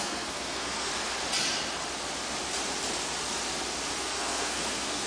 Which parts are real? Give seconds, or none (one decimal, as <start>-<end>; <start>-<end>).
0.9-4.0